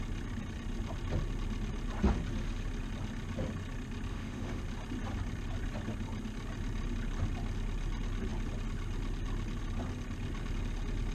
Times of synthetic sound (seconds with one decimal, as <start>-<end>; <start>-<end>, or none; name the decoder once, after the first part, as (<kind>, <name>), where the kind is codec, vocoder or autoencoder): 4.1-4.6 (autoencoder, DAC-VAE)